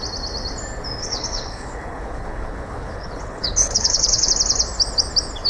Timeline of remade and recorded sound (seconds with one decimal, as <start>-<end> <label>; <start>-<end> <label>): 0.0-1.0 recorded; 1.0-4.3 remade; 4.3-5.5 recorded